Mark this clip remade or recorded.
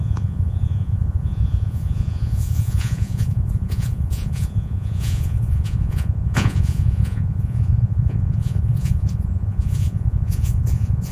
remade